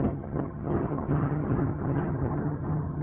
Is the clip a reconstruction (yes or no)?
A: yes